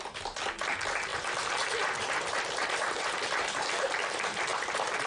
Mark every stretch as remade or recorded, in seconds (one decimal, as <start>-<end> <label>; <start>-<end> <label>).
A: 0.0-1.1 recorded; 1.1-4.1 remade; 4.1-4.5 recorded; 4.5-5.1 remade